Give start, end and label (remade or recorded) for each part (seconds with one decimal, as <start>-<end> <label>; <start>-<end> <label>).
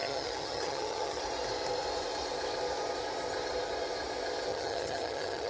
0.0-1.2 remade; 1.2-4.5 recorded; 4.5-5.5 remade